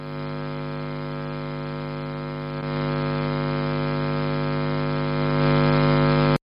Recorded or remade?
recorded